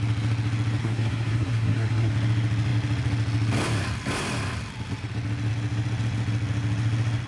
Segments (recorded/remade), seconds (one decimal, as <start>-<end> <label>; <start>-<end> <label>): 0.0-0.8 recorded; 0.8-2.1 remade; 2.1-7.3 recorded

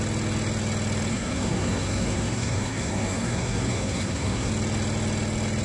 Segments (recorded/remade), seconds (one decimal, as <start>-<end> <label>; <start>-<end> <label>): 0.0-1.1 recorded; 1.1-4.5 remade; 4.5-5.6 recorded

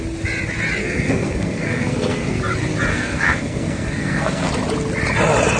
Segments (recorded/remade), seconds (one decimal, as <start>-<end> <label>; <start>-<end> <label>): 0.0-0.8 recorded; 0.8-2.4 remade; 2.4-2.9 recorded; 2.9-4.5 remade; 4.5-5.6 recorded

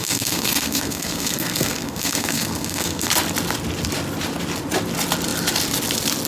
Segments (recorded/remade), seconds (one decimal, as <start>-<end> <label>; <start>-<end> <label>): 0.0-3.1 remade; 3.1-6.3 recorded

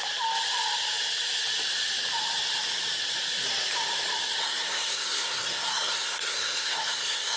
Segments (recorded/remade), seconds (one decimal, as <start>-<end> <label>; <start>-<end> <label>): 0.0-4.4 recorded; 4.4-7.4 remade

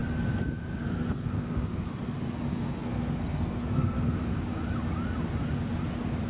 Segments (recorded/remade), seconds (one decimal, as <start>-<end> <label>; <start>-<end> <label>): 0.0-0.8 recorded; 0.8-1.9 remade; 1.9-2.8 recorded; 2.8-4.3 remade; 4.3-6.3 recorded